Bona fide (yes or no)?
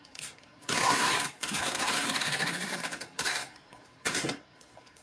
no